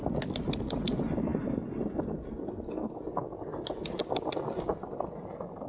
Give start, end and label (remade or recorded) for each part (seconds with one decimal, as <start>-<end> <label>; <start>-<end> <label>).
0.0-5.7 recorded